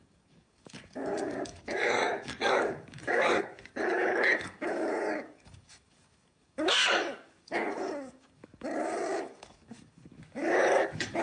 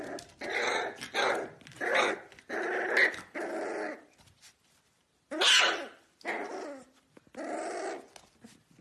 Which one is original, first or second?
second